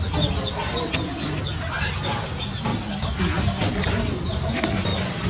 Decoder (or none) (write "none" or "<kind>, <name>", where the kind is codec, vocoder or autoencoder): none